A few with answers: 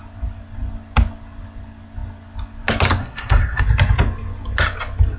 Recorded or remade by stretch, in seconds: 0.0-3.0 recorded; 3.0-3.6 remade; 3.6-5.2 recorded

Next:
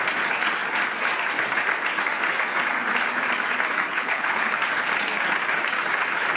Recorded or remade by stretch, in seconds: 0.0-3.9 recorded; 3.9-4.5 remade; 4.5-6.4 recorded

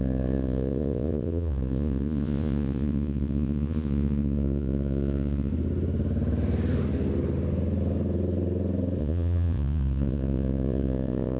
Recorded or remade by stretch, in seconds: 0.0-5.5 remade; 5.5-9.0 recorded; 9.0-11.4 remade

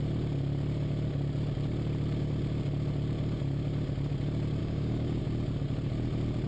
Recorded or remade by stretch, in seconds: 0.0-4.6 recorded; 4.6-5.2 remade; 5.2-6.5 recorded

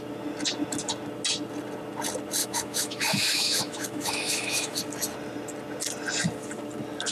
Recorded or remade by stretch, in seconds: 0.0-2.4 recorded; 2.4-4.8 remade; 4.8-7.1 recorded